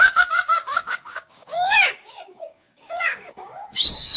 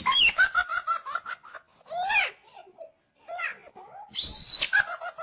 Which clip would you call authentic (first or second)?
second